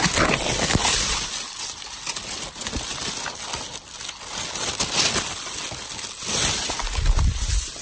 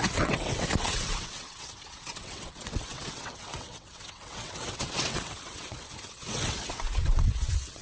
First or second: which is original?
first